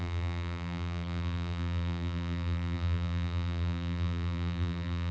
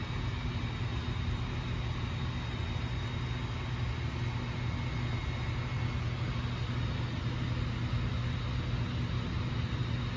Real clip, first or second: second